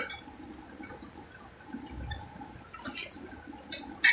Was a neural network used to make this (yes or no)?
no